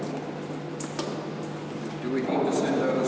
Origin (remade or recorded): recorded